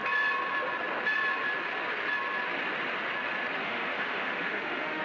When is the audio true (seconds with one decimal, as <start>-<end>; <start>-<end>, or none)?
0.0-3.6